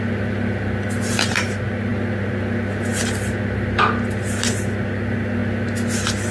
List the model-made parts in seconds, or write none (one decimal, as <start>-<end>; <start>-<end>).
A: none